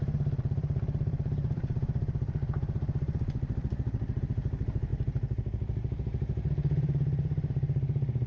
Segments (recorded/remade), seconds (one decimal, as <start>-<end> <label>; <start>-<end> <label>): 0.0-8.3 remade

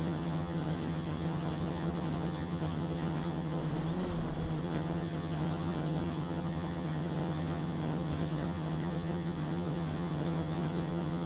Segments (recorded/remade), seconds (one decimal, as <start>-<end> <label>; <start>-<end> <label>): 0.0-3.6 remade; 3.6-4.6 recorded; 4.6-11.3 remade

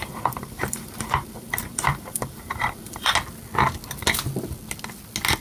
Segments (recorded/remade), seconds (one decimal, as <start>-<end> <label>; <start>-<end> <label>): 0.0-3.1 remade; 3.1-5.4 recorded

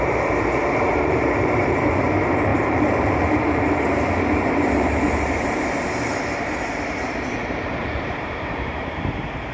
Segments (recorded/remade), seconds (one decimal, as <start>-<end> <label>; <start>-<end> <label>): 0.0-9.5 remade

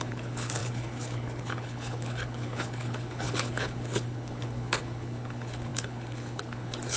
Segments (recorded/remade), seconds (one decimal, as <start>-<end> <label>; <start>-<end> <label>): 0.0-7.0 remade

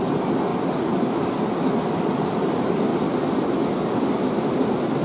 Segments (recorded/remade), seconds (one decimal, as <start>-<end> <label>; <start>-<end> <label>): 0.0-5.0 recorded